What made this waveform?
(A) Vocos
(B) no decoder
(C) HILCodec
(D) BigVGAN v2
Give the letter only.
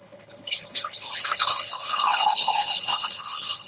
C